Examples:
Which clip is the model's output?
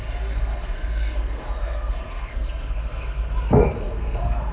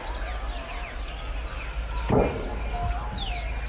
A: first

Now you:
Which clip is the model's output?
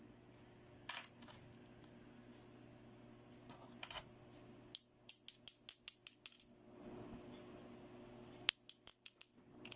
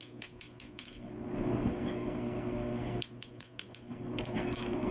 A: second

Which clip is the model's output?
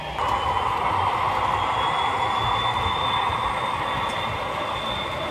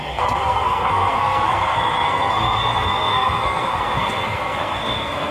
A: second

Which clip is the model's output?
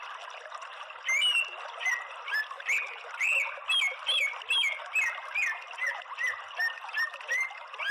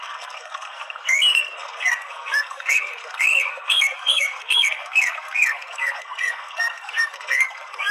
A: second